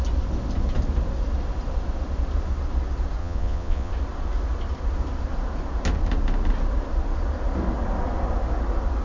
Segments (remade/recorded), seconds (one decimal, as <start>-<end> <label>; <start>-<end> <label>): 0.0-3.2 recorded; 3.2-3.9 remade; 3.9-9.0 recorded